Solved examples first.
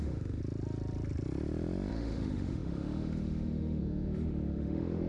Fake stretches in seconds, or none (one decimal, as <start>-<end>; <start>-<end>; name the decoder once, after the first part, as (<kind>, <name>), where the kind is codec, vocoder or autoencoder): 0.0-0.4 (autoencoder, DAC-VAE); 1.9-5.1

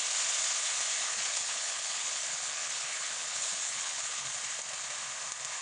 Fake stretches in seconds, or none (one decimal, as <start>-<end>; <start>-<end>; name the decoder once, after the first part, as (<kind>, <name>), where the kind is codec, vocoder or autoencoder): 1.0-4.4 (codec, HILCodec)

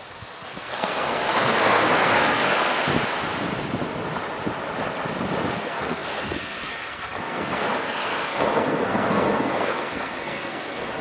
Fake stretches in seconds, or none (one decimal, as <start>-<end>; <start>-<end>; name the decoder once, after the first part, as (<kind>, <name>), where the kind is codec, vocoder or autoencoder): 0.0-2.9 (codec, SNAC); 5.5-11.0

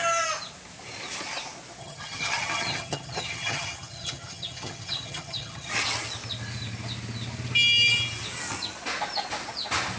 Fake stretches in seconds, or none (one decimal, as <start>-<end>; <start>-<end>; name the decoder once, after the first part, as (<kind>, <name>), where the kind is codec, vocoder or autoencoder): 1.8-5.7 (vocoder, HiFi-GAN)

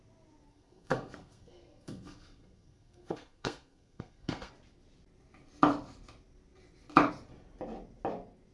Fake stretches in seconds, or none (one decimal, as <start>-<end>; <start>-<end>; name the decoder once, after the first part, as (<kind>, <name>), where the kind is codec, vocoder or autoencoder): 0.5-4.5 (codec, SNAC)

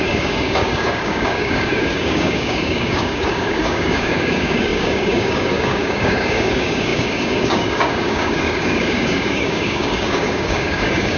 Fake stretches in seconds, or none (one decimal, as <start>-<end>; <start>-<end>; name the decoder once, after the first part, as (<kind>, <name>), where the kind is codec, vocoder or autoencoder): 0.0-11.2 (codec, DAC)

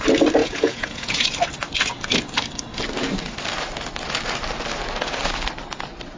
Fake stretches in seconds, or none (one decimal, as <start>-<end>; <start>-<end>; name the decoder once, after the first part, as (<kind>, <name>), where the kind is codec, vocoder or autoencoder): 0.4-1.3 (vocoder, Vocos)

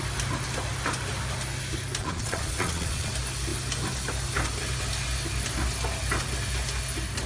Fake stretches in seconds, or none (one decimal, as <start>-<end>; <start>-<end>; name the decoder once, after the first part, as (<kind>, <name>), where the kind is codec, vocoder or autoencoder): 2.0-3.1 (vocoder, Vocos)